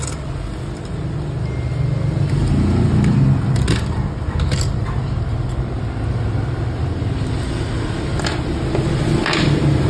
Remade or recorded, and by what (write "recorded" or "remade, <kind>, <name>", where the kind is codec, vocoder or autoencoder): recorded